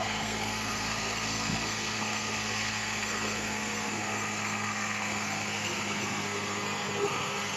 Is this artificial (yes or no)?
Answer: yes